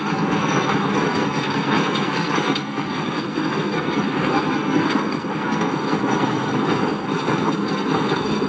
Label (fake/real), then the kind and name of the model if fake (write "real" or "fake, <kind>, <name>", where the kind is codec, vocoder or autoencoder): fake, codec, SNAC